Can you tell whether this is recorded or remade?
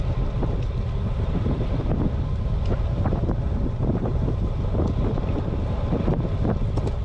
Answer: recorded